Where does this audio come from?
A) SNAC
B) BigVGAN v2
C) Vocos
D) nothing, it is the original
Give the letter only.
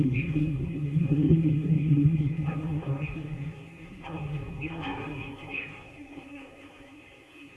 A